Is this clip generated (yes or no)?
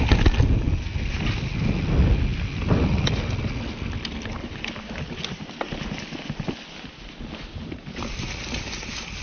no